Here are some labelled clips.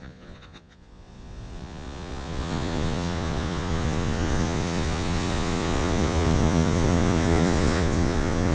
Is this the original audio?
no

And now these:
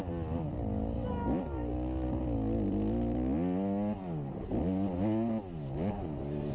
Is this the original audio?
yes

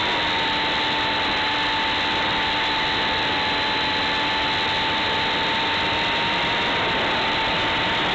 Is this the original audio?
yes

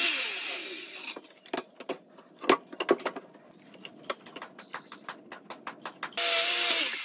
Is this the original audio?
yes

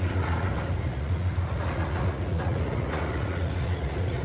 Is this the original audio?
no